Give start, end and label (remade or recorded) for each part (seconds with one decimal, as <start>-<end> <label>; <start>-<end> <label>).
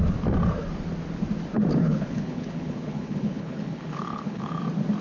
0.0-1.8 recorded; 1.8-4.6 remade; 4.6-5.0 recorded